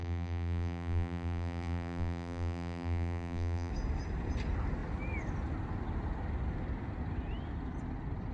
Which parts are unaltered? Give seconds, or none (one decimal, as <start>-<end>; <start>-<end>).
3.7-8.3